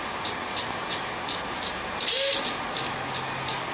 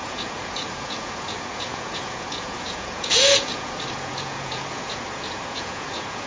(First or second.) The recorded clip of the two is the first